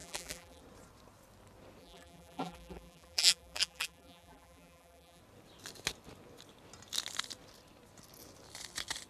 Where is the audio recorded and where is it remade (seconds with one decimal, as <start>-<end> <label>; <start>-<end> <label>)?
0.0-0.6 remade; 0.6-1.8 recorded; 1.8-5.2 remade; 5.2-9.1 recorded